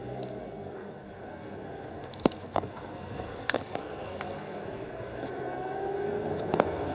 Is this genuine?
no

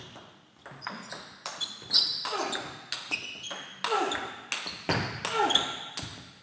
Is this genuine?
yes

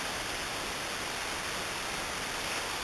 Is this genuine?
yes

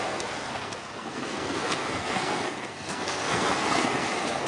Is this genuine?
no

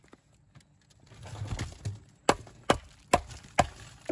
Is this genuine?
yes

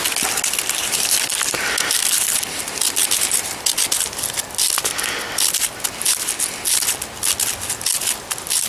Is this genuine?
yes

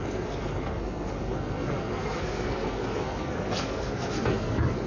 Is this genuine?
no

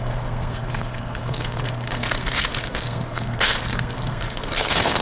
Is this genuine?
no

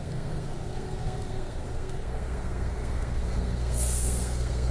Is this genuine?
no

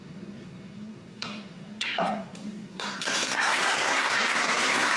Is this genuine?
no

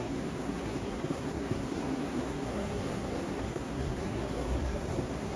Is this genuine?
no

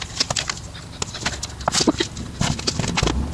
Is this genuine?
yes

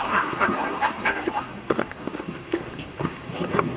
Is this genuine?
no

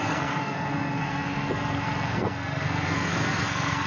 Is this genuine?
no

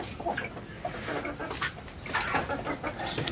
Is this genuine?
yes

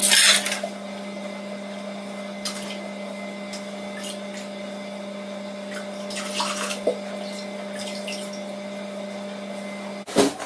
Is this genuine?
yes